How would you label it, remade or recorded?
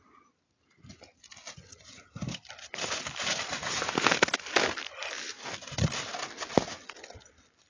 recorded